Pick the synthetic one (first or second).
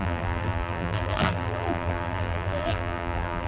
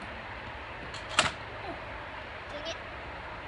first